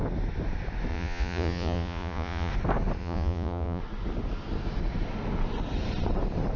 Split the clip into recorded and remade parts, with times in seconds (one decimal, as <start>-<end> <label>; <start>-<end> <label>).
0.0-0.9 recorded; 0.9-2.5 remade; 2.5-3.0 recorded; 3.0-3.8 remade; 3.8-6.6 recorded